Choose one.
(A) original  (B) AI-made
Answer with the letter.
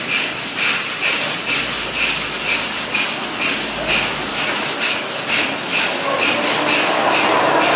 A